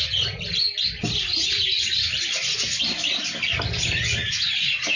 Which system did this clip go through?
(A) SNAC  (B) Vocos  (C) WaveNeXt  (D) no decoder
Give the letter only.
D